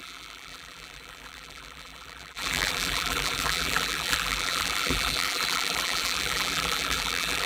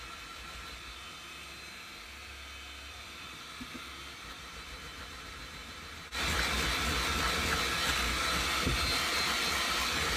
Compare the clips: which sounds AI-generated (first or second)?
first